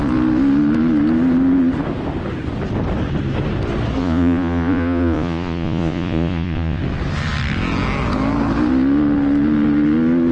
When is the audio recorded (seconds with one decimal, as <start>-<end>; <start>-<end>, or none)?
0.0-4.0; 6.8-10.3